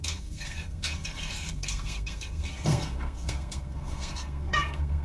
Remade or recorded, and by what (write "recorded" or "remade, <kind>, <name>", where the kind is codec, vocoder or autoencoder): remade, codec, SNAC